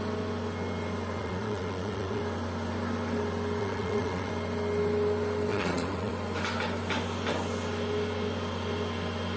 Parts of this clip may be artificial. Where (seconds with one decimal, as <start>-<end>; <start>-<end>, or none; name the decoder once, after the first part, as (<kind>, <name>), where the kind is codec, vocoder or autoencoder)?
1.2-2.2 (vocoder, Vocos); 3.6-4.3; 5.5-6.1